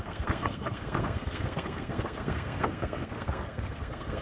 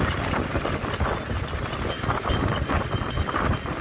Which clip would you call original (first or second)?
second